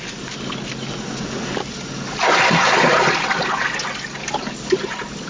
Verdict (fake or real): real